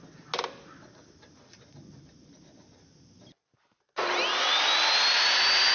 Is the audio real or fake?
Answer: real